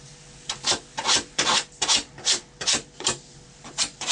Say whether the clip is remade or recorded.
recorded